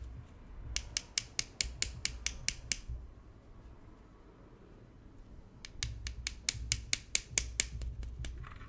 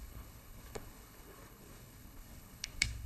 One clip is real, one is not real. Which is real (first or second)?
first